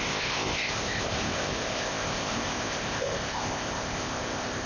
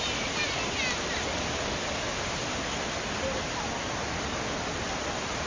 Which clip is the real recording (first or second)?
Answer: second